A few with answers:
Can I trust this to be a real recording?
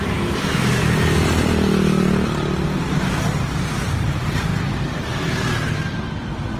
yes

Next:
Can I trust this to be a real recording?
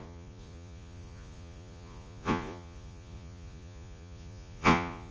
no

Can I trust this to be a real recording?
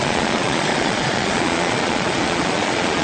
no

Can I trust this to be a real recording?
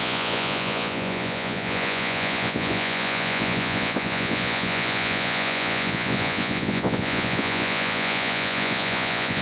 no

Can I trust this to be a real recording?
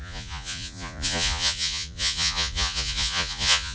no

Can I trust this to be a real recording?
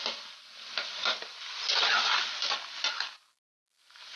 yes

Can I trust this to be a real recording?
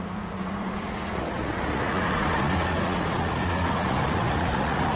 no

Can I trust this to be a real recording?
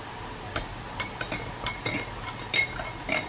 yes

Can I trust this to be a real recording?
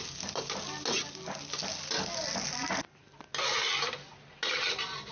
yes